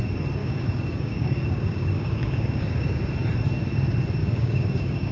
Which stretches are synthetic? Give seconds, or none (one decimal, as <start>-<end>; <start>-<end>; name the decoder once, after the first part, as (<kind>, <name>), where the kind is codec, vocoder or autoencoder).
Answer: 0.4-3.0 (codec, DAC); 4.2-5.1